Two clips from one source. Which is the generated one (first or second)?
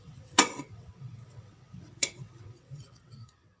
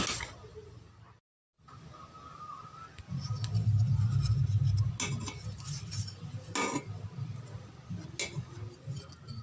first